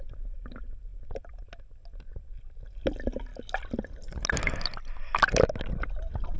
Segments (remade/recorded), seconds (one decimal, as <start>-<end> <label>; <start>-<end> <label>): 0.0-6.4 recorded